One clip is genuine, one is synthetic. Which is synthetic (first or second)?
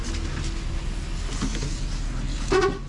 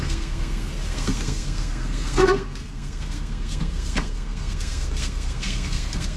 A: second